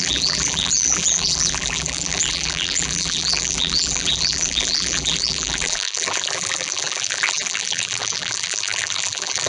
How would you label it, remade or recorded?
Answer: remade